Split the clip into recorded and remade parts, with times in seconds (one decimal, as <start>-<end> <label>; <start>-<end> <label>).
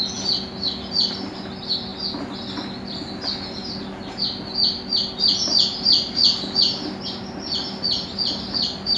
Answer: 0.0-9.0 recorded